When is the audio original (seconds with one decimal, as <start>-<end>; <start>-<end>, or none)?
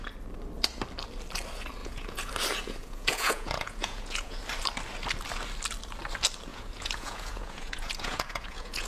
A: 0.0-1.8; 2.3-2.8; 4.4-6.5